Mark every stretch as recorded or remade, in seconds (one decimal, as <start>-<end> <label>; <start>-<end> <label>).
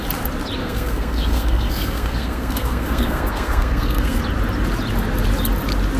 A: 0.0-0.6 recorded; 0.6-4.2 remade; 4.2-6.0 recorded